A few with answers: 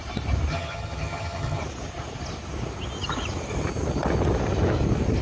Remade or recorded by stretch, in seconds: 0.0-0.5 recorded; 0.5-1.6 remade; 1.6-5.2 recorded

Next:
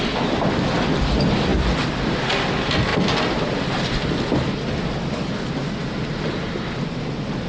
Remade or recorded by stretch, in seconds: 0.0-7.5 recorded